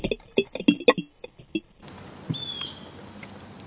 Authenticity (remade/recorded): recorded